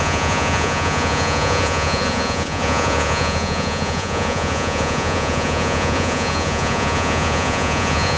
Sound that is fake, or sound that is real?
fake